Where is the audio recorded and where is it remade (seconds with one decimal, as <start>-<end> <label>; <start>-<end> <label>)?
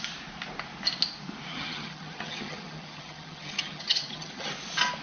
0.0-1.5 recorded; 1.5-4.5 remade; 4.5-5.0 recorded